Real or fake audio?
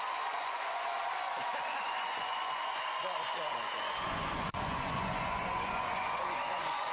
fake